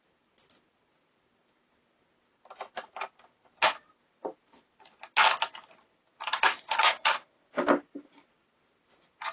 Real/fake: real